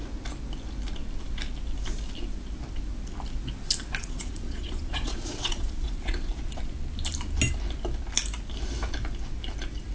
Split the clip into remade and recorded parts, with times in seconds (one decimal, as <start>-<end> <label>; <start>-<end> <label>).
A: 0.0-4.0 recorded; 4.0-6.6 remade; 6.6-9.9 recorded